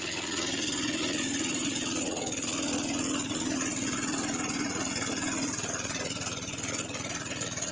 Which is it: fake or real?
fake